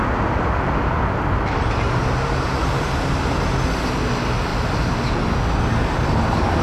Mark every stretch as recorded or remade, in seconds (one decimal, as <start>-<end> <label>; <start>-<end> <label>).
0.0-6.6 recorded